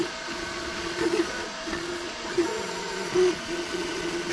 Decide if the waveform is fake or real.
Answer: fake